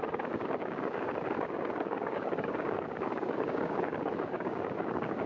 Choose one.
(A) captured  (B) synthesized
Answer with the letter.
B